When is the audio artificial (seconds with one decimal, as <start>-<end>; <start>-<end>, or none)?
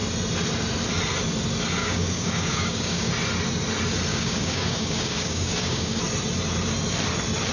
1.8-3.1; 4.1-6.0